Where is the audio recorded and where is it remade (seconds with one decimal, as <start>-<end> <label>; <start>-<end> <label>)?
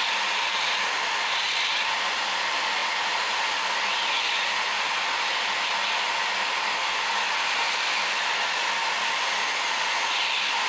0.0-10.7 recorded